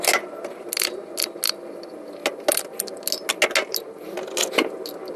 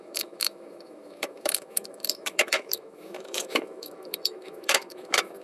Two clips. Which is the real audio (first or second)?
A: first